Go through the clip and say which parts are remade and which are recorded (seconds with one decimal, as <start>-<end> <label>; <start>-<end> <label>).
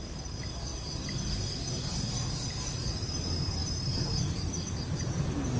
0.0-5.6 recorded